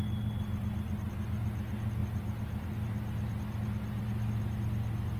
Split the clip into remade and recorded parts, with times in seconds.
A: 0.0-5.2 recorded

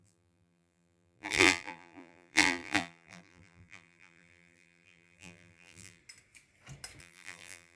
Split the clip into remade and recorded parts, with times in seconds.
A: 0.0-6.0 remade; 6.0-7.0 recorded; 7.0-7.8 remade

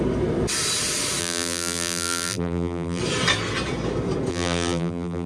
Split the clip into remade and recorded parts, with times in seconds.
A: 0.0-1.2 recorded; 1.2-3.0 remade; 3.0-4.3 recorded; 4.3-5.3 remade

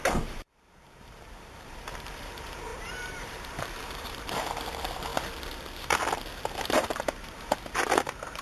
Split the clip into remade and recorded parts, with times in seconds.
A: 0.0-5.1 remade; 5.1-6.6 recorded; 6.6-8.4 remade

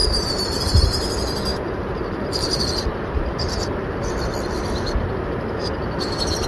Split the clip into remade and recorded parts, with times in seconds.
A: 0.0-1.1 remade; 1.1-1.5 recorded; 1.5-2.6 remade; 2.6-6.5 recorded

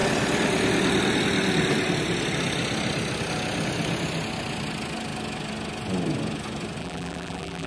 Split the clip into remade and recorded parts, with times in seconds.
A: 0.0-6.8 recorded; 6.8-7.7 remade